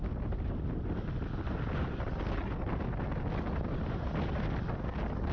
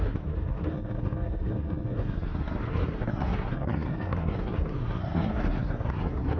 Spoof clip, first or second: second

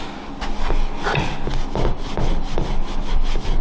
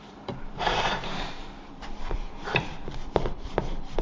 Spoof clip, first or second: second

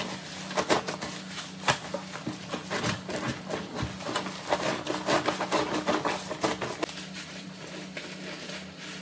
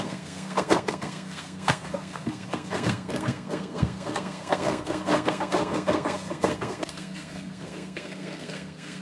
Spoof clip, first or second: second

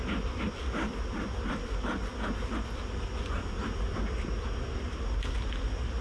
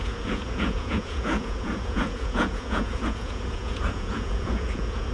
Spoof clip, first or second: second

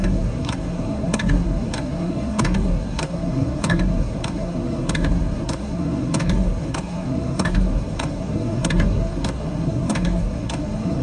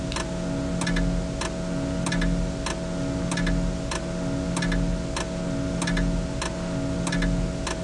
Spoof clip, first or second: first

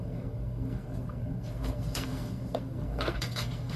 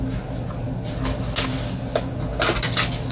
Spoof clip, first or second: first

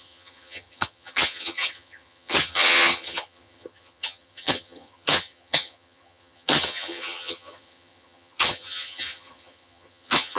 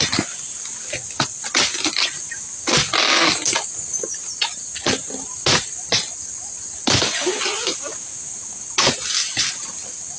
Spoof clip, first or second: first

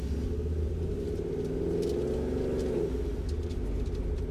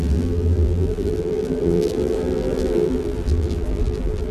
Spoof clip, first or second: second